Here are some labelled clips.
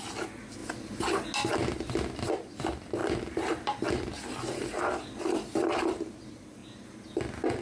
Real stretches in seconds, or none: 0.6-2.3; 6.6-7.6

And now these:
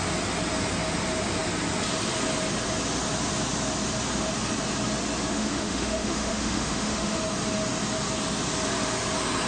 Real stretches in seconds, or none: 0.0-5.3; 7.2-9.5